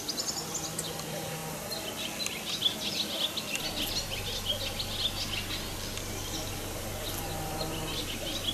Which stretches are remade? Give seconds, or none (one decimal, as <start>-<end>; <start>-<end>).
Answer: none